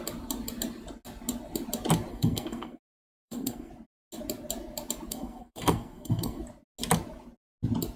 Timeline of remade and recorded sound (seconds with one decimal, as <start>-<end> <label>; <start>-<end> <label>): 0.0-2.1 recorded; 2.1-3.7 remade; 3.7-5.1 recorded; 5.1-6.4 remade; 6.4-8.0 recorded

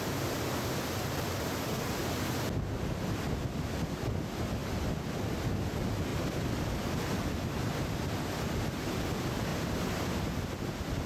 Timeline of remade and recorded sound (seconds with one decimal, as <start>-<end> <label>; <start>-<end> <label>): 0.0-11.1 recorded